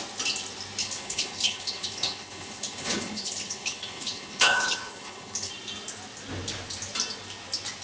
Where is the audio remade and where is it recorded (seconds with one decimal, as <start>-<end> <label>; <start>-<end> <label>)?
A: 0.0-0.8 recorded; 0.8-5.5 remade; 5.5-7.8 recorded